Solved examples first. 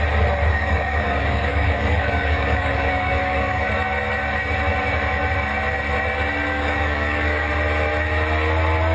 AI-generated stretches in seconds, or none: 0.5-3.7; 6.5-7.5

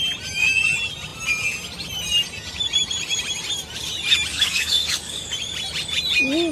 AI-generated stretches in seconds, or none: 4.3-5.3

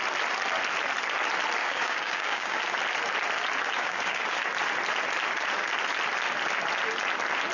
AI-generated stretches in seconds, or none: 1.6-2.6; 3.8-4.4

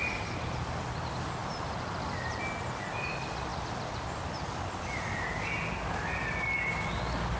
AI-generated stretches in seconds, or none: none

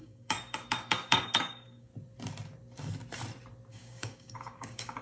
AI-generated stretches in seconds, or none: 0.0-1.9; 3.7-5.0